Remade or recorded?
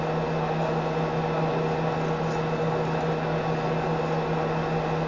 recorded